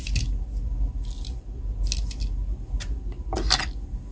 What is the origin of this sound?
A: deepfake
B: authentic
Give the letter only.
B